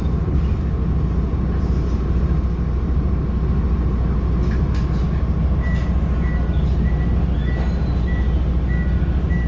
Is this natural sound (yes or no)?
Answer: yes